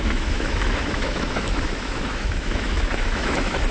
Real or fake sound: fake